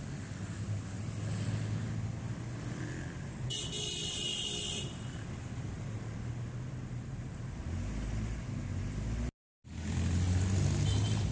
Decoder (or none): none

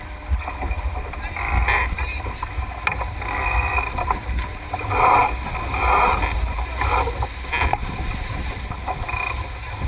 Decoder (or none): none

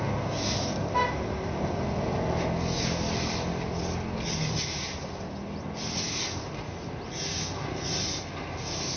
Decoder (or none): none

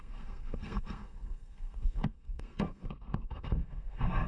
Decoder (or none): codec, SNAC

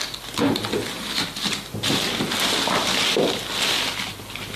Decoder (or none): none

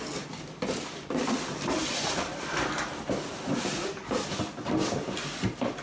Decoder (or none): none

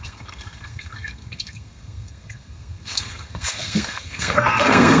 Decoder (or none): codec, SNAC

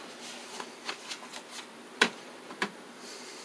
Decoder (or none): none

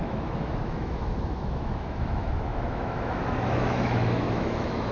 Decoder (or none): autoencoder, DAC-VAE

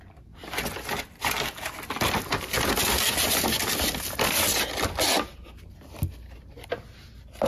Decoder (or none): none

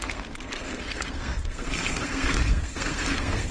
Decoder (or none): codec, SNAC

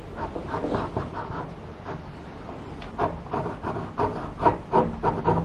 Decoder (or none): none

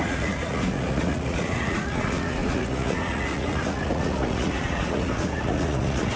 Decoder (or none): vocoder, Vocos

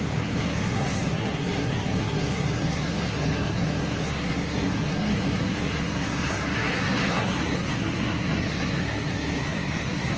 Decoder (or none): codec, SNAC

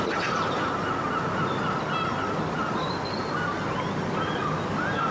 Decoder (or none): none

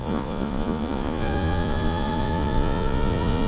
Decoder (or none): vocoder, Vocos